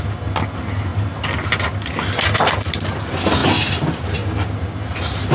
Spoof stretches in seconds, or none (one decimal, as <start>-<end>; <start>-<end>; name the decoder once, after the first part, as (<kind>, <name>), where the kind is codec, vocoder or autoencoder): none